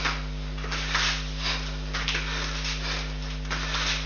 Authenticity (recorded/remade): recorded